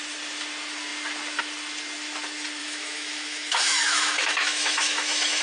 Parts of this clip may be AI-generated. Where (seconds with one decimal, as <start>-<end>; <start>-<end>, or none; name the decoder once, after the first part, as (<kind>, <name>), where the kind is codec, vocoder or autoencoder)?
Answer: 2.6-5.4 (autoencoder, DAC-VAE)

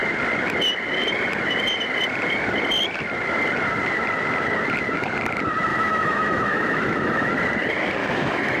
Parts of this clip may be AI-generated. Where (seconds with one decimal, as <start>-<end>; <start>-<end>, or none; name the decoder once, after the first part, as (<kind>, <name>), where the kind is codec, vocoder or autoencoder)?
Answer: 5.7-7.3 (autoencoder, DAC-VAE); 8.0-8.6

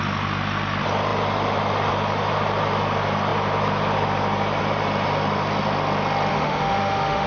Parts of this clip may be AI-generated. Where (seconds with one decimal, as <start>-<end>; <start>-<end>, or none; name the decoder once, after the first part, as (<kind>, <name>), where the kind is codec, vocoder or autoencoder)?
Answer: 6.3-7.3 (autoencoder, DAC-VAE)